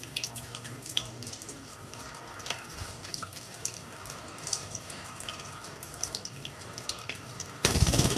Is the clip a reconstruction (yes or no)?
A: yes